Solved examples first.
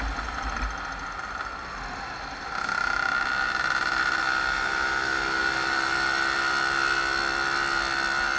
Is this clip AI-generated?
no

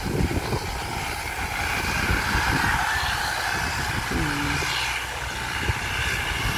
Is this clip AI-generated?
no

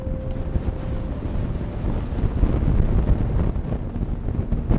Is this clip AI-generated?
no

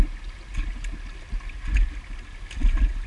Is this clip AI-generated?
no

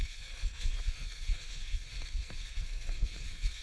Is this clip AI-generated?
yes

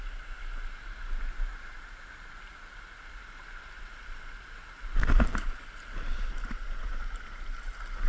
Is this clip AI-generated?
no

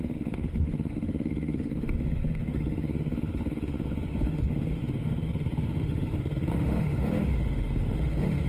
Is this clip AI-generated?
yes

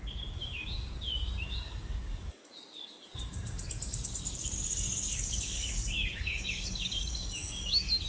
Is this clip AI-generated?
yes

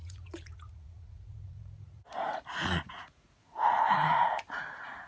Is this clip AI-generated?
yes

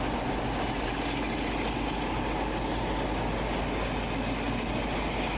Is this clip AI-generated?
no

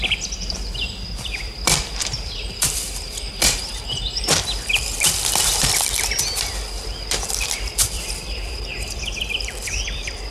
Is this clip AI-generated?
yes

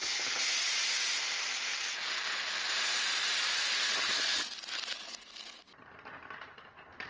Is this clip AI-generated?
no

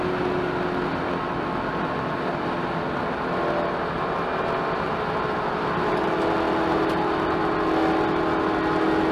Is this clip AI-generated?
no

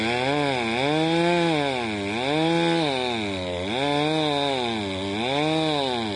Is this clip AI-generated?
no